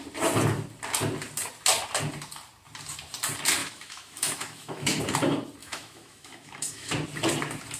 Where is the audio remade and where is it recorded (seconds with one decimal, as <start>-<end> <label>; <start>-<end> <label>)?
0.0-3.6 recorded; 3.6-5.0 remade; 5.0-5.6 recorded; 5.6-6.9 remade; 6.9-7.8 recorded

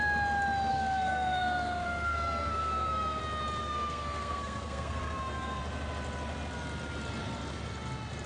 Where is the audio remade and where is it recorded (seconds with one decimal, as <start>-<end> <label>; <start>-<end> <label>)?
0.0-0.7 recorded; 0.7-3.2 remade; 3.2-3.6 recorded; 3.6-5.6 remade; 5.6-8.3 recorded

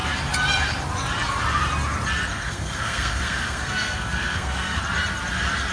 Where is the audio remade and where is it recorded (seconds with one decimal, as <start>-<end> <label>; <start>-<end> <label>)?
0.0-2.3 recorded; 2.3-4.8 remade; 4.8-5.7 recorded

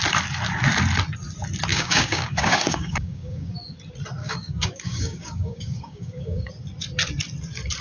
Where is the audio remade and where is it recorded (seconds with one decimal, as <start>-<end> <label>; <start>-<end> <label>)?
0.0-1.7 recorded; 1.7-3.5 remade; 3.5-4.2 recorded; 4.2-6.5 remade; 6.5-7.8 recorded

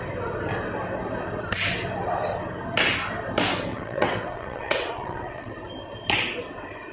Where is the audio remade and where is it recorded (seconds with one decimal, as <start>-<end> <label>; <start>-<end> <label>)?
0.0-3.7 recorded; 3.7-5.5 remade; 5.5-6.9 recorded

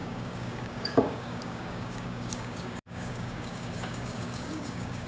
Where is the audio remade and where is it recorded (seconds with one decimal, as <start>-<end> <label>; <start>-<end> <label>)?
0.0-5.1 remade

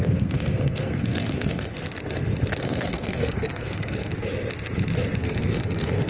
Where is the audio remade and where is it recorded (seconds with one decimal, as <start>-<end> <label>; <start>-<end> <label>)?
0.0-1.7 remade; 1.7-2.6 recorded; 2.6-4.1 remade; 4.1-5.2 recorded; 5.2-6.1 remade

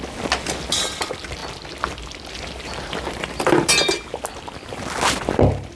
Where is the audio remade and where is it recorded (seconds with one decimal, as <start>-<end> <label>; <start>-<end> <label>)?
0.0-5.8 recorded